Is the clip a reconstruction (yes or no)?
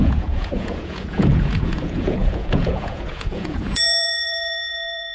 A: yes